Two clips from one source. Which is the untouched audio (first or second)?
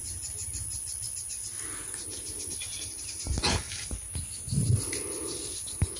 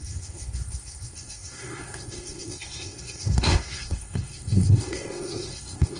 first